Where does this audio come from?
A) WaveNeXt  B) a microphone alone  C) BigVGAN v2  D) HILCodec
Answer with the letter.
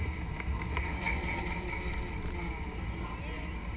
B